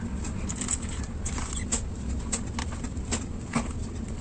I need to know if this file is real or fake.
real